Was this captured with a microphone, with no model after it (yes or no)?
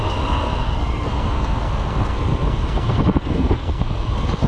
no